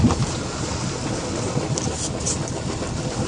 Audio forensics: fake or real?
real